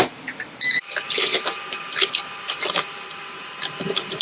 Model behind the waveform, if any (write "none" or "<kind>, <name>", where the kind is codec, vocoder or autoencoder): vocoder, BigVGAN v2